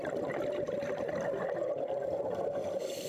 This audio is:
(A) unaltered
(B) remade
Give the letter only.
A